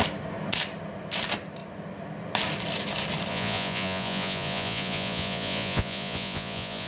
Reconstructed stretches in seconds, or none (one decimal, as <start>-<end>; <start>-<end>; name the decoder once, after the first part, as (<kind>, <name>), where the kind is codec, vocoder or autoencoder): 3.3-6.9 (vocoder, Vocos)